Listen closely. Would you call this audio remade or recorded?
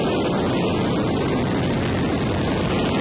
recorded